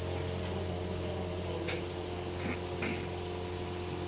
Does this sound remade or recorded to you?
recorded